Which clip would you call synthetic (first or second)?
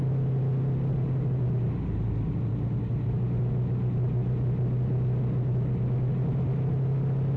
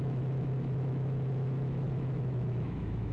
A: second